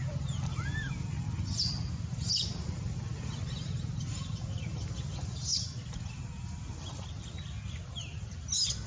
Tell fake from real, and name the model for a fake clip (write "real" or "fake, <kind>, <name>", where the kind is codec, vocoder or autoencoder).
real